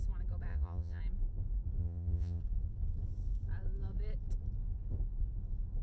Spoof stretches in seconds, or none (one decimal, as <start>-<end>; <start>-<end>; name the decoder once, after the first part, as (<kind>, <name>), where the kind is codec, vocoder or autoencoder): 0.5-1.0 (vocoder, Vocos); 1.8-2.4